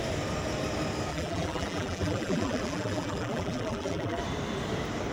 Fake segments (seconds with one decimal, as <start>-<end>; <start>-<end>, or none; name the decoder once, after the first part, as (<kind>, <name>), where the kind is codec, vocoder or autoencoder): 1.1-4.2 (vocoder, BigVGAN v2)